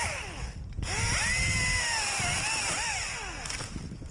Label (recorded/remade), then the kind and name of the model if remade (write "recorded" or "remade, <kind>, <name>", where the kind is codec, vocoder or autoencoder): recorded